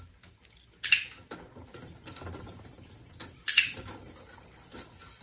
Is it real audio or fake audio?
real